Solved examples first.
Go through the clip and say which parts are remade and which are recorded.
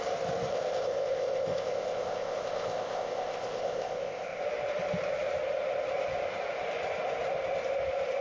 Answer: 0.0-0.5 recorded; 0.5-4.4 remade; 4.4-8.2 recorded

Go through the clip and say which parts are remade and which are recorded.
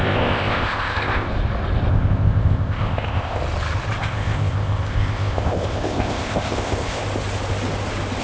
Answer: 0.0-1.3 remade; 1.3-1.9 recorded; 1.9-3.4 remade; 3.4-4.0 recorded; 4.0-7.0 remade; 7.0-8.2 recorded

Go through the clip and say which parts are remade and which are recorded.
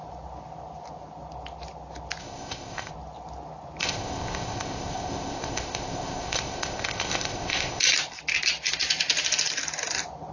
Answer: 0.0-2.2 recorded; 2.2-2.9 remade; 2.9-3.8 recorded; 3.8-7.8 remade; 7.8-10.3 recorded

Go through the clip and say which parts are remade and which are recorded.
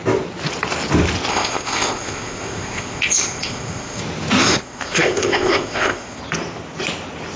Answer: 0.0-1.3 recorded; 1.3-4.0 remade; 4.0-4.4 recorded; 4.4-6.2 remade; 6.2-7.4 recorded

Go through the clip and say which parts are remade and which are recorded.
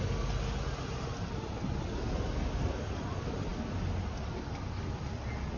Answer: 0.0-5.6 recorded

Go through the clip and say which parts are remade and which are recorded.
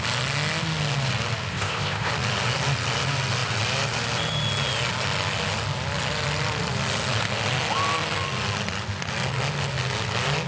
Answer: 0.0-1.5 recorded; 1.5-2.1 remade; 2.1-10.5 recorded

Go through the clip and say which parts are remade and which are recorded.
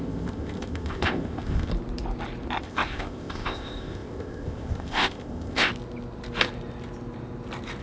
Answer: 0.0-1.7 remade; 1.7-2.6 recorded; 2.6-5.7 remade; 5.7-7.8 recorded